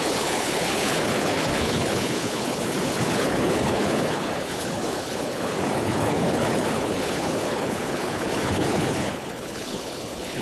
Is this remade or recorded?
remade